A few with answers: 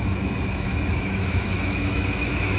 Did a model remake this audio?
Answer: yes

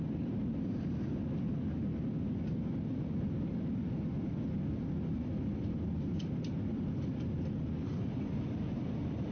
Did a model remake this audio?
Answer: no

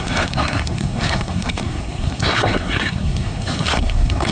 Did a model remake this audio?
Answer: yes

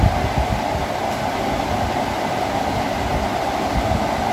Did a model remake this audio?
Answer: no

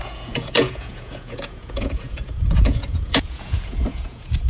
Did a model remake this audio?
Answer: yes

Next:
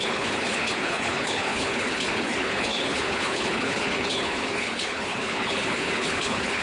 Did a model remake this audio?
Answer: yes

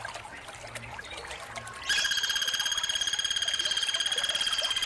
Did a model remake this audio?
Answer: no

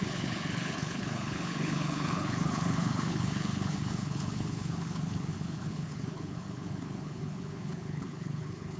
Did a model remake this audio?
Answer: yes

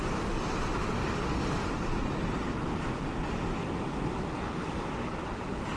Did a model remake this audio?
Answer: no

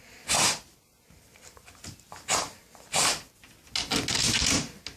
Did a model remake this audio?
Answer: no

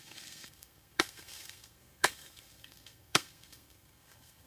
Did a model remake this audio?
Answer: yes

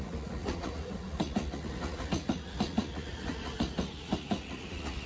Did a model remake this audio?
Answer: yes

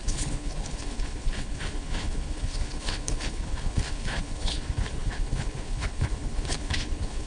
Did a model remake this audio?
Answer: yes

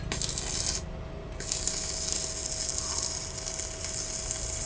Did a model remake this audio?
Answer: no